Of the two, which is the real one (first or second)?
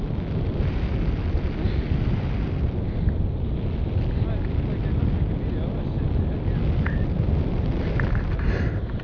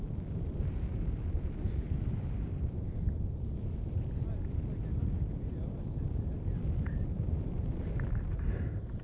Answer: first